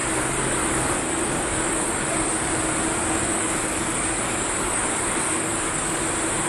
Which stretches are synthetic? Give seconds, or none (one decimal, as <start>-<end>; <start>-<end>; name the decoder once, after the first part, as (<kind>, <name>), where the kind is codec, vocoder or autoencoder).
0.0-2.5 (codec, DAC); 3.0-6.0